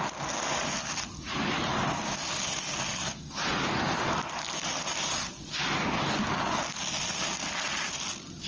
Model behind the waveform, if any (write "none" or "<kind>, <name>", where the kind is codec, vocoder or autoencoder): none